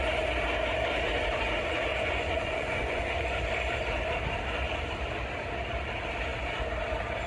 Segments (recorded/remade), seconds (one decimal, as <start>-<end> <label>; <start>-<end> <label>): 0.0-1.9 recorded; 1.9-3.4 remade; 3.4-7.3 recorded